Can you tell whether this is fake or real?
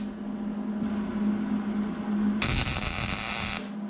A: real